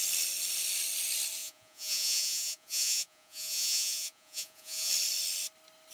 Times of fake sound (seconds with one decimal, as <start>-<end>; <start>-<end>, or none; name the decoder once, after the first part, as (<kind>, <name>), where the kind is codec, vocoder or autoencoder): 1.4-4.9 (vocoder, Vocos)